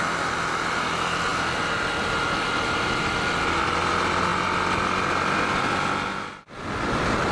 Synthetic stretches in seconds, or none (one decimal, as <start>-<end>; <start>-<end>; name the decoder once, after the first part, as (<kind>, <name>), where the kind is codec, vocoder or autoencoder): none